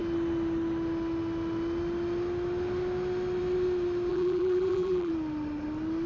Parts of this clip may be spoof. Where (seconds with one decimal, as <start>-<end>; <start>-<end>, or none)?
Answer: 4.1-5.1